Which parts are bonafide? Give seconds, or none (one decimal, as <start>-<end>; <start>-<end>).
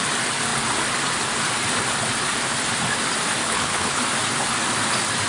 0.0-3.4; 4.0-5.3